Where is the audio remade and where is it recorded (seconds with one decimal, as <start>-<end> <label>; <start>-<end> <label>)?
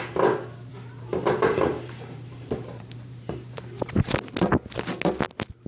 0.0-0.7 recorded; 0.7-4.1 remade; 4.1-5.7 recorded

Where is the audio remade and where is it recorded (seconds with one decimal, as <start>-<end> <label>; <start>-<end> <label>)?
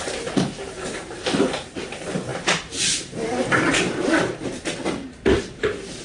0.0-6.0 remade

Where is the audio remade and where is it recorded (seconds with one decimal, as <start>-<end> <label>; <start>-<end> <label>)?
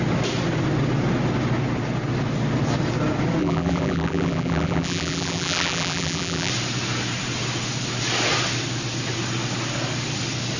0.0-3.4 recorded; 3.4-6.5 remade; 6.5-10.6 recorded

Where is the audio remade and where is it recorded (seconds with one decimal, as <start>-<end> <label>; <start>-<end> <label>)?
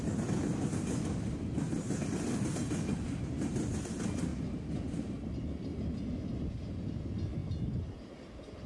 0.0-4.3 remade; 4.3-5.3 recorded; 5.3-5.7 remade; 5.7-6.5 recorded; 6.5-7.4 remade; 7.4-8.7 recorded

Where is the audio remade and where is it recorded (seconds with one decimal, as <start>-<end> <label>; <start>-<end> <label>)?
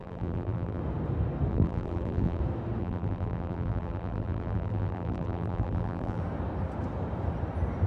0.0-0.8 remade; 0.8-1.5 recorded; 1.5-2.4 remade; 2.4-2.8 recorded; 2.8-6.2 remade; 6.2-7.9 recorded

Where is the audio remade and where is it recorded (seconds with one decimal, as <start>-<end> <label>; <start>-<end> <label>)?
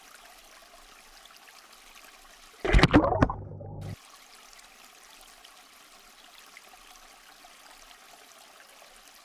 0.0-9.2 recorded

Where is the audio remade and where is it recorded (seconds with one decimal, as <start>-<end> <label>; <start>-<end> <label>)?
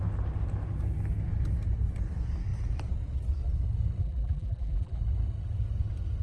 0.0-4.0 recorded; 4.0-5.0 remade; 5.0-6.2 recorded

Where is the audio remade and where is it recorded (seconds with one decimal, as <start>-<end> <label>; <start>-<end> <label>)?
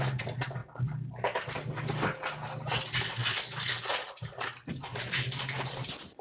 0.0-3.2 recorded; 3.2-5.5 remade; 5.5-6.2 recorded